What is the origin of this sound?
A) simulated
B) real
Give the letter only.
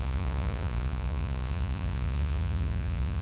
A